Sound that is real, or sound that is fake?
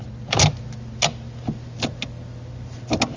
real